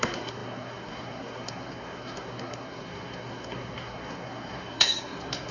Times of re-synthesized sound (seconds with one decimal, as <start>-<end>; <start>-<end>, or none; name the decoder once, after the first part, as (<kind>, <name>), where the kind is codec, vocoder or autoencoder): 0.0-5.5 (codec, SNAC)